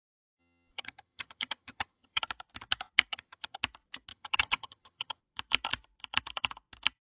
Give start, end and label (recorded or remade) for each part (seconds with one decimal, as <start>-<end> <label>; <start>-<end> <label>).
0.0-0.4 recorded; 0.4-2.2 remade; 2.2-3.1 recorded; 3.1-3.6 remade; 3.6-4.1 recorded; 4.1-5.2 remade; 5.2-7.0 recorded